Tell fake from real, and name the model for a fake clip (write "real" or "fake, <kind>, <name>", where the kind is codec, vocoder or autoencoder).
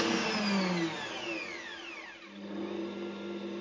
real